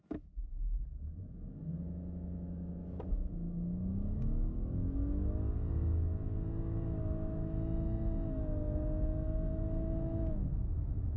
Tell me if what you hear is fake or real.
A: fake